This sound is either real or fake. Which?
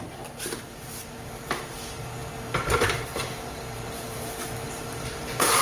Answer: fake